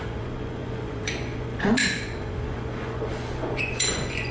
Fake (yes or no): yes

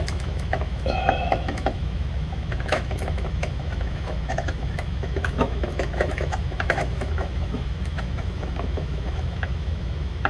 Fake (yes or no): yes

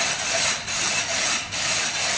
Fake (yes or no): no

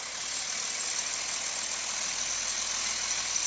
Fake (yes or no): no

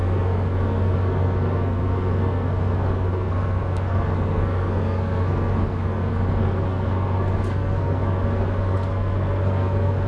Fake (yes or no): yes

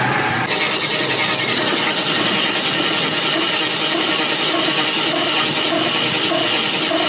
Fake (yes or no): no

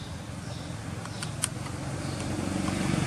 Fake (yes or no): no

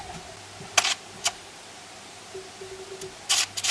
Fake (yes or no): no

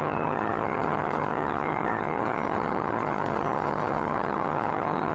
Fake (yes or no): yes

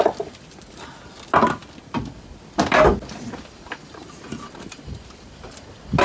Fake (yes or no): no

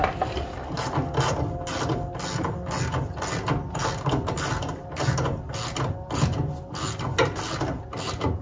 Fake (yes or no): no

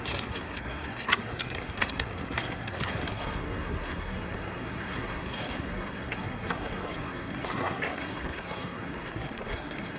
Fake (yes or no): yes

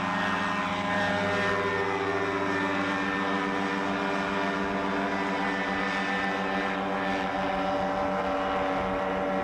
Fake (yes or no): no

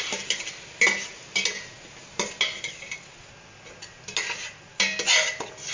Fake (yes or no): no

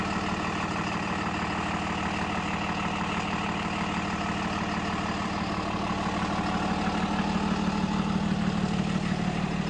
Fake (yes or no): no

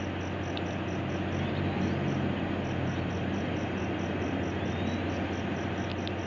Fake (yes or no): no